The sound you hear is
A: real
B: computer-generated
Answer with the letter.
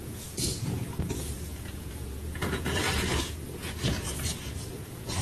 B